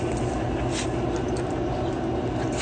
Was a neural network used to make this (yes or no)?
no